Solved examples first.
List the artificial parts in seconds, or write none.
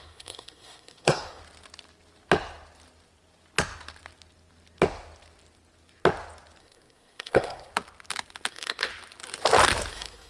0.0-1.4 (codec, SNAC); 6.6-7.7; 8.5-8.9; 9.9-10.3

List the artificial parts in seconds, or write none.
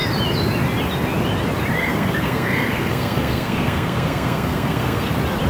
1.8-5.1 (codec, SNAC)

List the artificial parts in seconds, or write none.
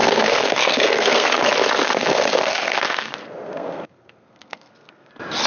0.0-1.4 (codec, SNAC); 1.8-5.1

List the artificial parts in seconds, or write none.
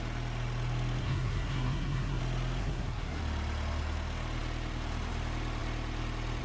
1.0-2.2 (codec, SNAC); 2.6-3.2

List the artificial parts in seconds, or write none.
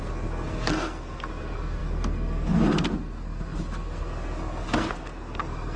0.0-5.8 (codec, SNAC)